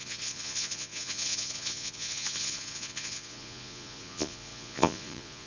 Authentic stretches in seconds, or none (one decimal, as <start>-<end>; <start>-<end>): none